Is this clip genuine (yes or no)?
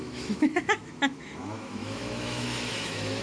no